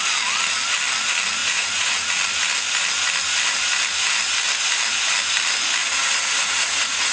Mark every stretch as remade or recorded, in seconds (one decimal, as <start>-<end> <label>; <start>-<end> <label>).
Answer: 0.0-1.4 recorded; 1.4-2.1 remade; 2.1-5.8 recorded; 5.8-7.1 remade